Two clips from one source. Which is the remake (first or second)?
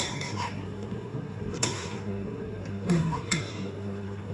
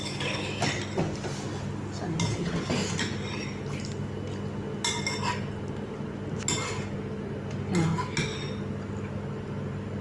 first